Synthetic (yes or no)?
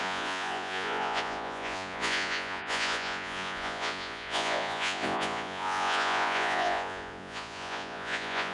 yes